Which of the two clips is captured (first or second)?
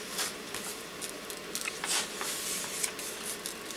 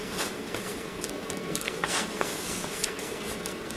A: first